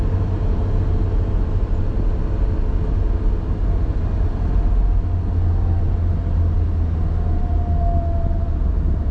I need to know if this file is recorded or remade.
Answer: recorded